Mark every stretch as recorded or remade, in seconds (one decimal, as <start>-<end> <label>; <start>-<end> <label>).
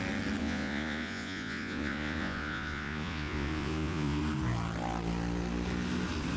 0.0-0.4 recorded; 0.4-4.2 remade; 4.2-6.4 recorded